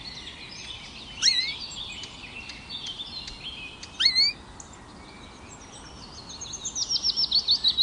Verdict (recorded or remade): recorded